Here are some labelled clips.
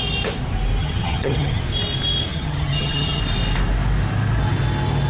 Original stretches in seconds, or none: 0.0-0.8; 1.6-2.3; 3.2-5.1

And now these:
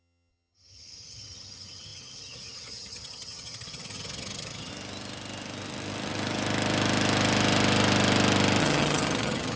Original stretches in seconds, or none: 4.7-8.6

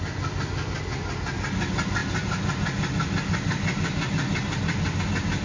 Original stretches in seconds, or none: 0.0-5.4